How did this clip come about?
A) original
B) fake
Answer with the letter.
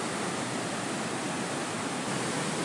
A